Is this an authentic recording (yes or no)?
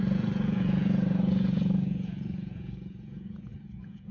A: no